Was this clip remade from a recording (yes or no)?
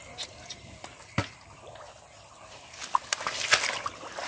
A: no